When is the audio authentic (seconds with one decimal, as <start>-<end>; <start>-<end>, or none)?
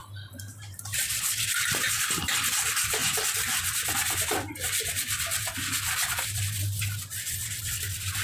2.3-3.0; 6.8-8.2